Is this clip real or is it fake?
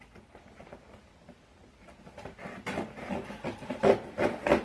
real